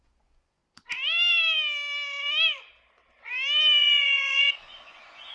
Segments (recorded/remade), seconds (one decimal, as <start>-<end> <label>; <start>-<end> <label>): 0.0-0.6 remade; 0.6-3.8 recorded; 3.8-5.3 remade